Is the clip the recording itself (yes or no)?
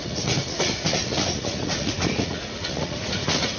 no